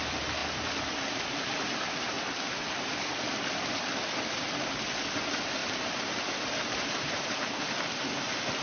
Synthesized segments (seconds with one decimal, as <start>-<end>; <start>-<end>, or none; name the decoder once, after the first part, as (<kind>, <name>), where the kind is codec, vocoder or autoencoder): 5.6-7.7 (vocoder, BigVGAN v2)